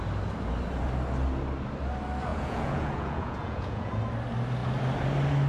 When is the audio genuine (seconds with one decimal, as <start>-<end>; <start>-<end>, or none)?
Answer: 0.0-2.3; 3.9-5.5